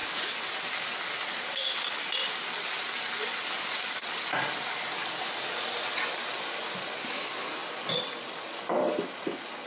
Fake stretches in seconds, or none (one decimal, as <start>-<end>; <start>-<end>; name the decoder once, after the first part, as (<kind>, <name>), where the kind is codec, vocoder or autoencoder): none